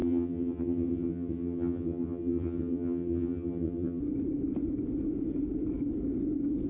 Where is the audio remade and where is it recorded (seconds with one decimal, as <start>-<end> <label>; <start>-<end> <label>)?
0.0-4.0 remade; 4.0-6.7 recorded